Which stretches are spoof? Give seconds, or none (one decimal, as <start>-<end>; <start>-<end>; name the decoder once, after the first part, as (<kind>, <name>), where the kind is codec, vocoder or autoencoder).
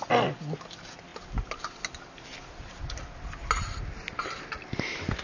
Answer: none